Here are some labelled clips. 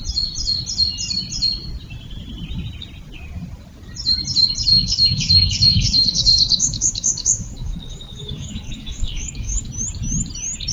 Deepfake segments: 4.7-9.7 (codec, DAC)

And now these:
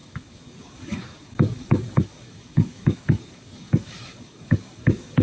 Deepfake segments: 0.0-5.2 (codec, DAC)

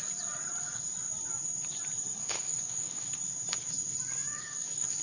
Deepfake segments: 2.2-3.1 (codec, DAC); 4.3-5.0

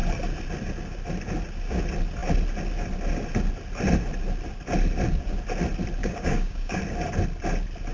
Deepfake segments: 6.0-6.8 (codec, DAC)

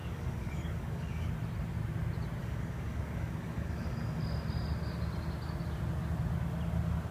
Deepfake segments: 0.0-1.3 (codec, DAC); 2.4-4.2

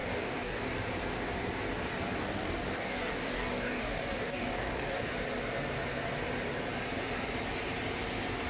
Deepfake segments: 0.0-0.6 (codec, DAC); 2.2-5.1

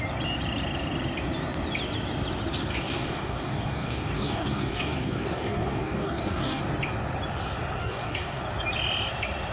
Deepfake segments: 2.7-6.6 (codec, DAC); 7.8-8.4

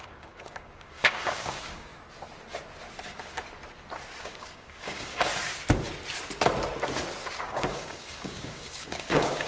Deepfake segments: 0.0-1.9 (codec, DAC); 4.2-5.3; 7.4-9.5